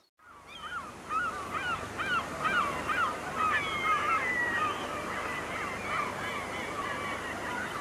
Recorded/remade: recorded